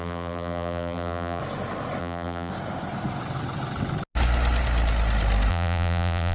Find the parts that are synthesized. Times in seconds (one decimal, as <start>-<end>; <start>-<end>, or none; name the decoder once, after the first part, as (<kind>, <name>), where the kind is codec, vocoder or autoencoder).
0.0-1.4 (vocoder, BigVGAN v2); 2.0-2.5; 5.5-6.3